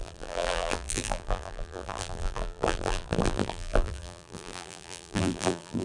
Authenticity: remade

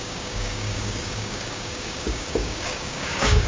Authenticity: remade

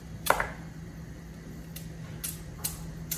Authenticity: recorded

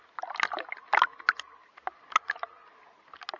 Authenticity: recorded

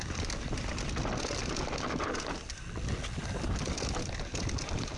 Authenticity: recorded